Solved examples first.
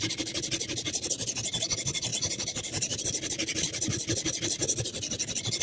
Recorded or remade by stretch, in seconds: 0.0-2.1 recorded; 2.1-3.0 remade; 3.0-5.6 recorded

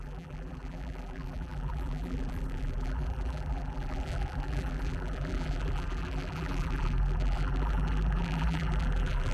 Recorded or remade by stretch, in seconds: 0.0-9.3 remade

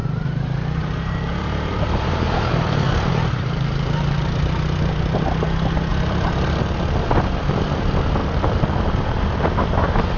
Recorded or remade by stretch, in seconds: 0.0-4.9 remade; 4.9-5.9 recorded; 5.9-6.6 remade; 6.6-8.2 recorded; 8.2-9.2 remade; 9.2-10.2 recorded

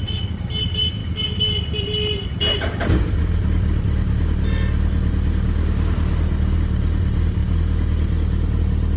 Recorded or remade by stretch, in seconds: 0.0-9.0 recorded

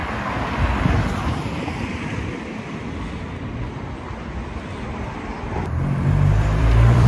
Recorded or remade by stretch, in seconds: 0.0-1.0 recorded; 1.0-7.1 remade

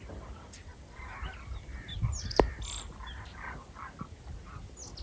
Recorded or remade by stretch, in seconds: 0.0-5.0 recorded

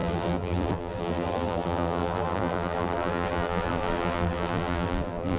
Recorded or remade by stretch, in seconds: 0.0-5.4 remade